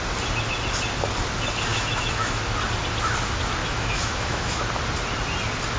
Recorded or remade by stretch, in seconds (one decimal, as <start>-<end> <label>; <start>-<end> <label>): 0.0-1.7 recorded; 1.7-2.4 remade; 2.4-3.6 recorded; 3.6-4.6 remade; 4.6-5.8 recorded